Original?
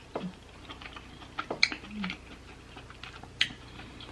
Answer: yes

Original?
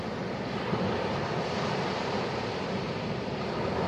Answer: no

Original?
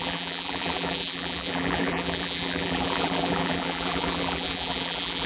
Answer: no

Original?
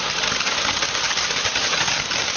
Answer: yes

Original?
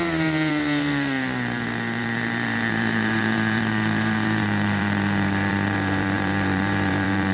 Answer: no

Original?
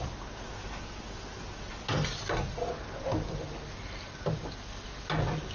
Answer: yes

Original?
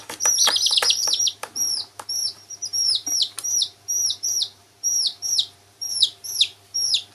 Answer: no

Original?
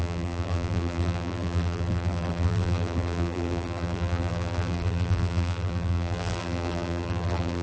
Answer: no